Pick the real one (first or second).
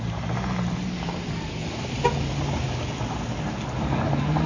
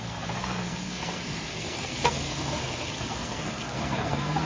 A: first